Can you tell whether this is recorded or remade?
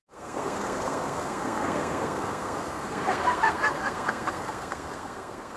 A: remade